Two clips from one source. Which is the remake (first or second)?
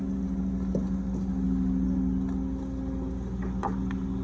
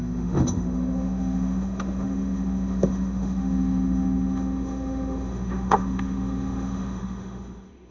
second